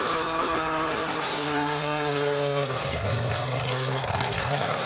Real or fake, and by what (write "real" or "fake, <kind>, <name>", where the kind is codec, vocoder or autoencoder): fake, codec, SNAC